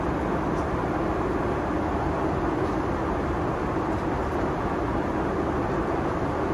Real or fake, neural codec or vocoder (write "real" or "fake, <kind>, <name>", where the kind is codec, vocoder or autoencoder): real